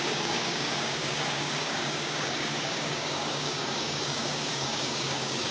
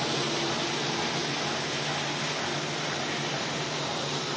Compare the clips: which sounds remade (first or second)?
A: first